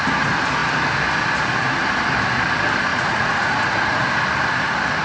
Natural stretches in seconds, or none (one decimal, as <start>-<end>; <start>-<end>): 0.0-2.9; 4.0-5.0